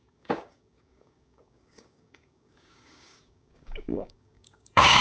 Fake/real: fake